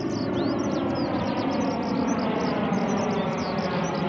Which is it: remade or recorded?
recorded